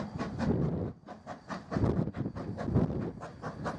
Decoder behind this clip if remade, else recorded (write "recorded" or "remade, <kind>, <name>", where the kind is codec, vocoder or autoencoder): recorded